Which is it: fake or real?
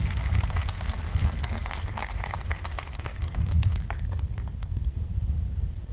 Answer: fake